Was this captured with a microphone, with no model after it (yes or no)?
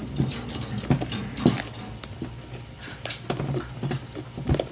yes